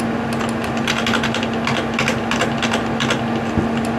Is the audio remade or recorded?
recorded